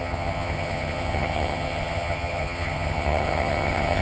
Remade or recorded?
remade